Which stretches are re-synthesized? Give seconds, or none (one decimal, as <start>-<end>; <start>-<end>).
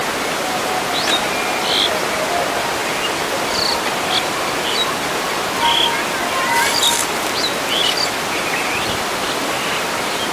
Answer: 2.8-3.4